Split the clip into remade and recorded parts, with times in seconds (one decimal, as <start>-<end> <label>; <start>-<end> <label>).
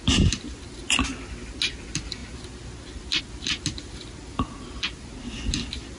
0.0-6.0 recorded